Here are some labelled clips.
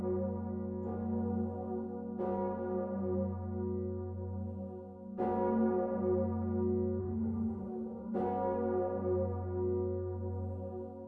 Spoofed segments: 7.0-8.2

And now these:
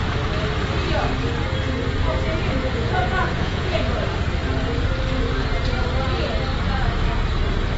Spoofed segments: 2.6-3.9